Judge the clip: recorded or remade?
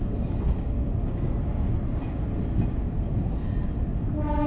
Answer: recorded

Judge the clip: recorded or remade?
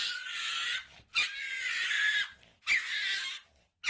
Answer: recorded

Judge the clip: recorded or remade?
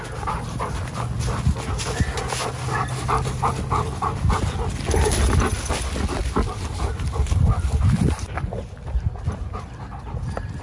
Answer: recorded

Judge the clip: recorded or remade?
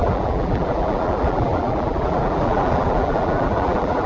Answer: remade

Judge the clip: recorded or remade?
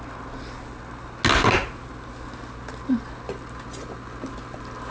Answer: recorded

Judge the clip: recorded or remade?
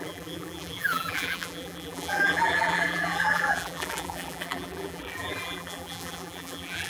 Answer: remade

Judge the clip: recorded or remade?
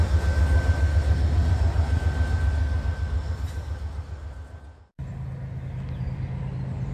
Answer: recorded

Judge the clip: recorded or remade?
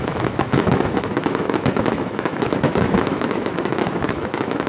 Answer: remade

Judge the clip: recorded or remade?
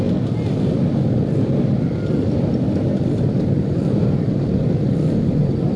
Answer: recorded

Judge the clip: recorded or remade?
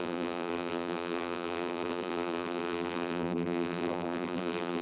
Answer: remade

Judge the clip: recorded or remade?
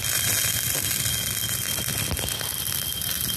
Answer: recorded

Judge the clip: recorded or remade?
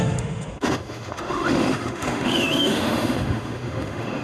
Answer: remade